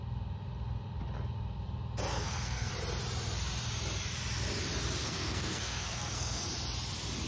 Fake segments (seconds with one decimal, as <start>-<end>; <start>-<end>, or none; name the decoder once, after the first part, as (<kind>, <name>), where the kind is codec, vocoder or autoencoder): 2.1-2.7 (codec, SNAC); 5.0-6.4